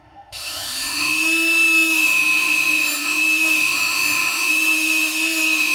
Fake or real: fake